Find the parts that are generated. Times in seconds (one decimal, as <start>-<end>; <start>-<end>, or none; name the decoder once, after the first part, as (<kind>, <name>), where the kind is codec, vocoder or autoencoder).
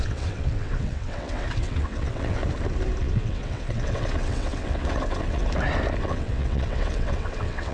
0.0-2.4 (vocoder, WaveNeXt); 3.0-5.4; 6.0-7.7